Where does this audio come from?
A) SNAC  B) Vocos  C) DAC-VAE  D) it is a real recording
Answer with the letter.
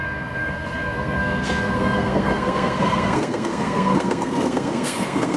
A